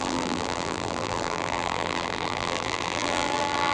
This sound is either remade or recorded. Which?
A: remade